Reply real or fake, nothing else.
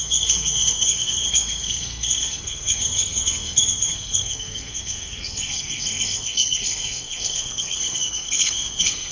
fake